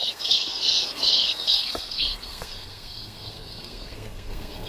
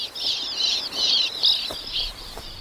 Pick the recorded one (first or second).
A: second